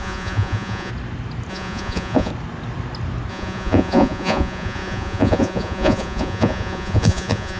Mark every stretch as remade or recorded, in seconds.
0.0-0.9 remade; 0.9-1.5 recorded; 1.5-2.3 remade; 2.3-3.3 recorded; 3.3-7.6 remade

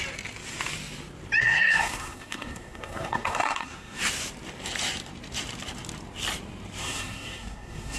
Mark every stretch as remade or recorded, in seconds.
0.0-1.4 recorded; 1.4-4.0 remade; 4.0-6.8 recorded; 6.8-8.0 remade

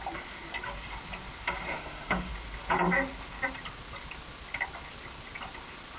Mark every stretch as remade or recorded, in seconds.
0.0-1.7 recorded; 1.7-2.3 remade; 2.3-6.0 recorded

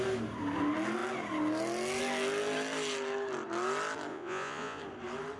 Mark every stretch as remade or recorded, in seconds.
0.0-4.1 recorded; 4.1-4.8 remade; 4.8-5.4 recorded

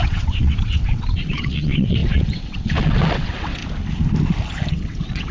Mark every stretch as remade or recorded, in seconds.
0.0-3.6 remade; 3.6-4.5 recorded; 4.5-5.3 remade

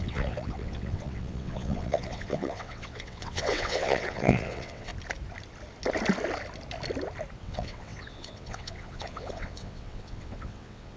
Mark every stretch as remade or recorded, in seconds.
0.0-4.9 remade; 4.9-7.4 recorded; 7.4-11.0 remade

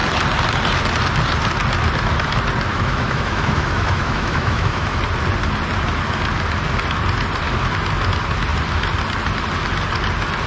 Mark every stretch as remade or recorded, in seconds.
0.0-2.7 recorded; 2.7-5.0 remade; 5.0-10.5 recorded